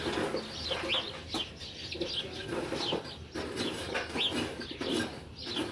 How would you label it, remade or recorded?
recorded